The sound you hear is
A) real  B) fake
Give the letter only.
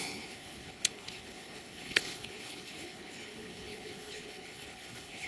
B